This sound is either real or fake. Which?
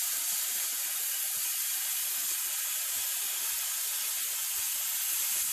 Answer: real